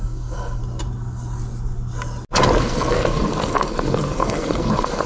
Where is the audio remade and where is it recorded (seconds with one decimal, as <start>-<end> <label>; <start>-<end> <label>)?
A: 0.0-0.6 remade; 0.6-2.6 recorded; 2.6-5.1 remade